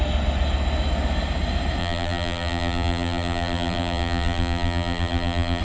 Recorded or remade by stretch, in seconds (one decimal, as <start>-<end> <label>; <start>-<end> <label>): 0.0-1.8 recorded; 1.8-5.6 remade